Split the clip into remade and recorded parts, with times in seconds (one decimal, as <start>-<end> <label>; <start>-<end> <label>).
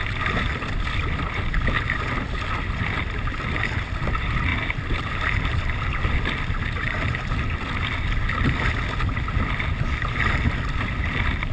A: 0.0-11.5 recorded